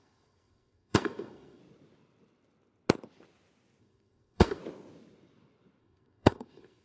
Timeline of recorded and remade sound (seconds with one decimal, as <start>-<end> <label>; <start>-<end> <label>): 0.0-1.6 remade; 1.6-3.8 recorded; 3.8-4.6 remade; 4.6-5.8 recorded; 5.8-6.8 remade